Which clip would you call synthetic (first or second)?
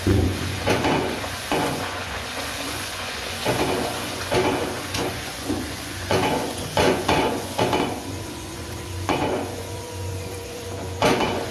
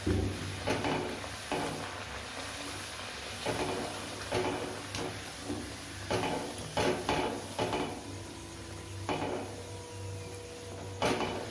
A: first